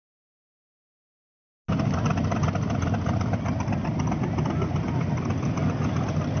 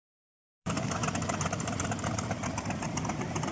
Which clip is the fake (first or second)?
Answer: second